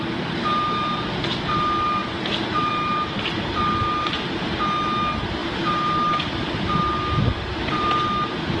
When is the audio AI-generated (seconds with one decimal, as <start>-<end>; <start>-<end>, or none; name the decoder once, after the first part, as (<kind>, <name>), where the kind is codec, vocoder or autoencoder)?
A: none